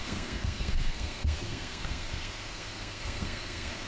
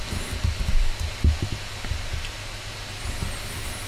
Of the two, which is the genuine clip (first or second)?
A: second